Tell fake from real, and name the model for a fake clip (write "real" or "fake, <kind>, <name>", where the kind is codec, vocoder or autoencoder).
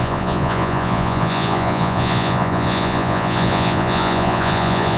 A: fake, vocoder, Vocos